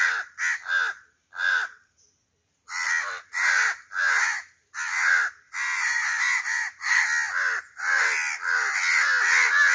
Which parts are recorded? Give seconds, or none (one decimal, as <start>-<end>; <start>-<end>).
0.0-5.6; 7.0-9.7